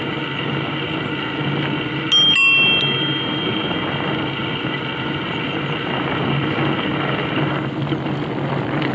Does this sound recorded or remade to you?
recorded